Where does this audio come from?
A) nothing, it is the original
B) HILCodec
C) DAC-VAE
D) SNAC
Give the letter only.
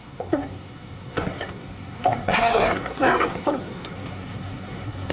D